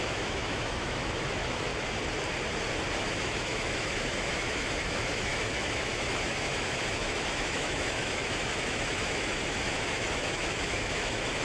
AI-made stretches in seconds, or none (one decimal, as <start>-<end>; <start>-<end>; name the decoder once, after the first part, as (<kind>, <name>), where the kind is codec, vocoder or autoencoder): 0.0-1.7 (autoencoder, DAC-VAE); 3.0-11.4